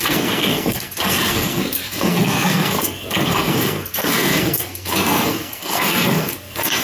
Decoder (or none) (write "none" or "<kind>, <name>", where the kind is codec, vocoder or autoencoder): codec, SNAC